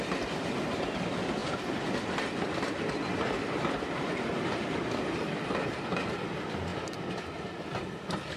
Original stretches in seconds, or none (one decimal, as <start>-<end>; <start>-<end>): 0.0-1.4; 6.0-8.4